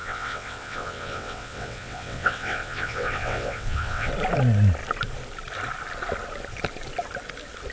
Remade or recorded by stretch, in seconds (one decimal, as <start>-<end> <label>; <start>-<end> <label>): 0.0-4.1 remade; 4.1-7.7 recorded